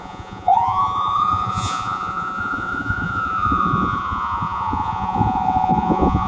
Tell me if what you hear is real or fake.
fake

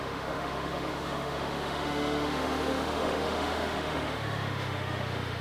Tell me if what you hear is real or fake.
fake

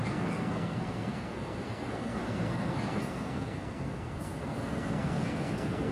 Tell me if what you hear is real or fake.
fake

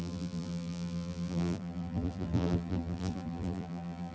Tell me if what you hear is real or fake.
fake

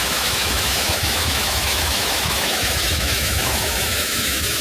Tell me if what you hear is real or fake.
fake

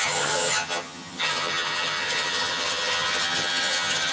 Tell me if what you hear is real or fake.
fake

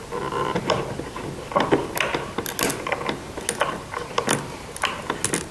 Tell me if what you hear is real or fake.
real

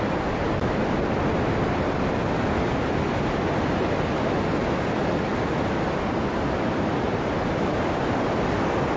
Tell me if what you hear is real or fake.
real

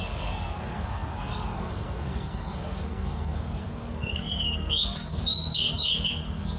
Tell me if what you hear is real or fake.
fake